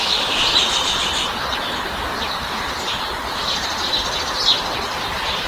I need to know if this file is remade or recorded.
recorded